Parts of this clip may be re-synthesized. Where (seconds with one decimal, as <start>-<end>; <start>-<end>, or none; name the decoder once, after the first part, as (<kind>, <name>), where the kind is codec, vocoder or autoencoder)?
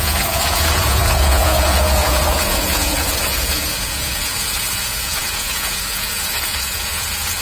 0.0-7.4 (vocoder, Vocos)